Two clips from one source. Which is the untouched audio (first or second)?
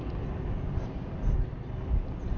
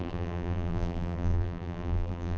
first